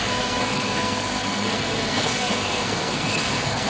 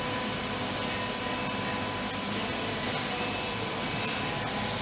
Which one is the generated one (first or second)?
first